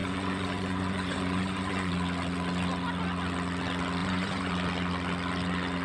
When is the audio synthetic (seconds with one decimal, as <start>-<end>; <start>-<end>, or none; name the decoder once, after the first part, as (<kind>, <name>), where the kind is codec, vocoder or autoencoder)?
0.0-1.9 (vocoder, Vocos); 4.0-4.5